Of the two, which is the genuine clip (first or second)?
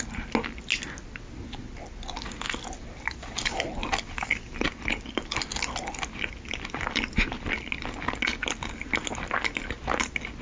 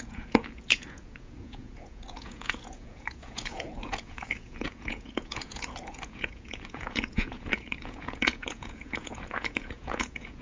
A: first